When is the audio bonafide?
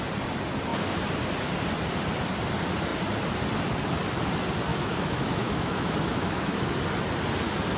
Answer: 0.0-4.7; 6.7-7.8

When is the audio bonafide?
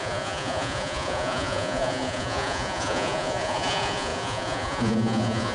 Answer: none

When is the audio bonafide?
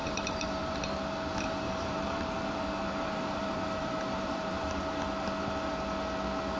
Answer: 0.8-1.3; 4.8-6.6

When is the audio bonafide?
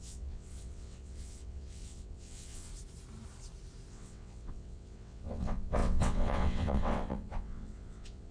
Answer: 2.7-3.9